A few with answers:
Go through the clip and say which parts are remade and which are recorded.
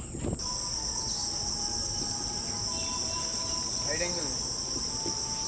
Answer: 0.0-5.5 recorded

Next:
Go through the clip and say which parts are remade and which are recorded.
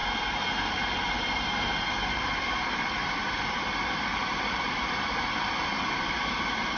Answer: 0.0-4.1 recorded; 4.1-4.8 remade; 4.8-6.8 recorded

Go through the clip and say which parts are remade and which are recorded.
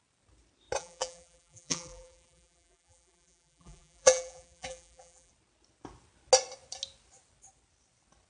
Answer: 0.0-0.8 recorded; 0.8-5.3 remade; 5.3-8.3 recorded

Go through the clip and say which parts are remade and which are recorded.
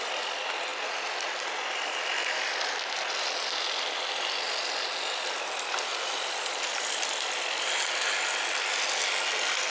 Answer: 0.0-5.9 recorded; 5.9-8.1 remade; 8.1-9.7 recorded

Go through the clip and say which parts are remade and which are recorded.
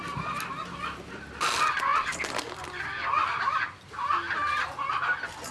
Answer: 0.0-5.5 recorded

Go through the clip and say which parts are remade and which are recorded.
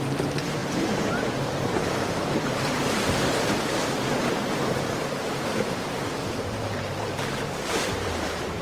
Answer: 0.0-8.6 remade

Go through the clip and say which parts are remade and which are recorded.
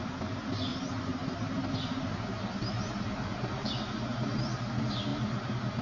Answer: 0.0-0.7 recorded; 0.7-1.7 remade; 1.7-3.3 recorded; 3.3-4.3 remade; 4.3-5.1 recorded; 5.1-5.8 remade